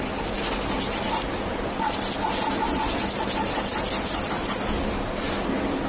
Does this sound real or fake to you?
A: real